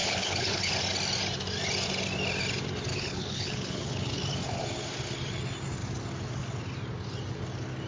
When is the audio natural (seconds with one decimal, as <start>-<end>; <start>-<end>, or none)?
0.7-2.9; 4.2-7.9